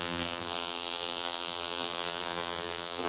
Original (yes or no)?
no